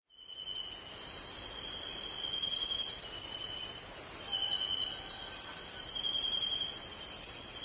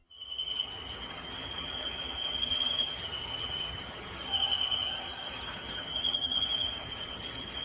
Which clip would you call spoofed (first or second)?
second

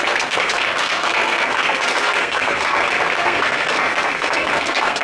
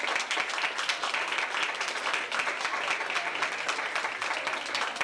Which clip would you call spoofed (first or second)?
first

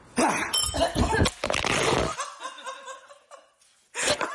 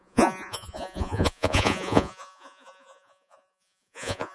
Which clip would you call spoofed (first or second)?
second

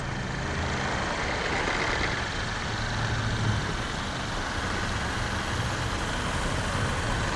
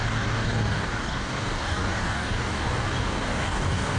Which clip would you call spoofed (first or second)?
second